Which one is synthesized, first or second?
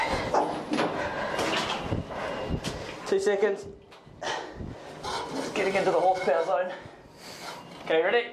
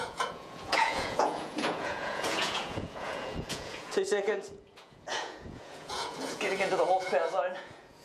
second